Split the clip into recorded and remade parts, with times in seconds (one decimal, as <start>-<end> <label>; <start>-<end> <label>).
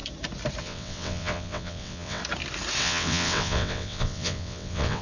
0.0-0.6 recorded; 0.6-2.2 remade; 2.2-2.8 recorded; 2.8-5.0 remade